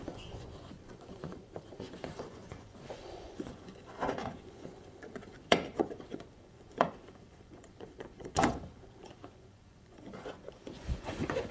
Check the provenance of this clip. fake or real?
fake